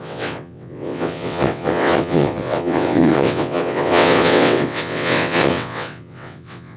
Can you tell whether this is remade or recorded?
remade